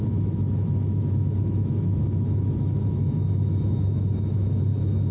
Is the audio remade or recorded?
remade